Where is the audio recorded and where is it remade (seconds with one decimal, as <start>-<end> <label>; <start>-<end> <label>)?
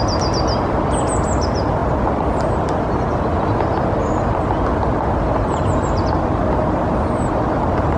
0.0-8.0 recorded